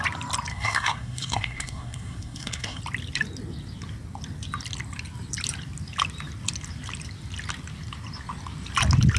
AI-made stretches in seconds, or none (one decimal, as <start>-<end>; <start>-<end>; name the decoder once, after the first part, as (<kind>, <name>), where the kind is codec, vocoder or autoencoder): 0.5-2.8 (codec, SNAC)